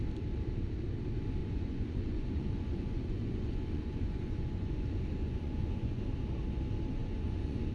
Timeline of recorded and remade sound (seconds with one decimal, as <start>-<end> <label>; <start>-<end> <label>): 0.0-1.4 recorded; 1.4-6.0 remade; 6.0-7.0 recorded; 7.0-7.7 remade